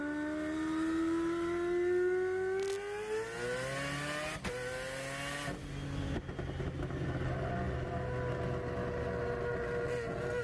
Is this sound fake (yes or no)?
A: no